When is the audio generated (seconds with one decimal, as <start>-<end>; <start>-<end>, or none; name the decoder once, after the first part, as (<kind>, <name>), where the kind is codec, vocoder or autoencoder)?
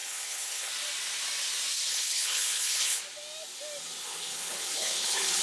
0.0-0.7 (codec, HILCodec); 1.9-3.0; 4.0-5.4